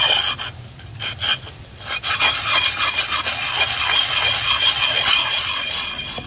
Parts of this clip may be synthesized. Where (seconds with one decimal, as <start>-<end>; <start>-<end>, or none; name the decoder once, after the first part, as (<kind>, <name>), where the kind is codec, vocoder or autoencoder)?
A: none